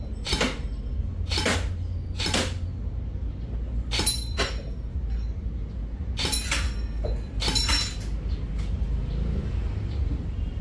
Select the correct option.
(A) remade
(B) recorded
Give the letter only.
B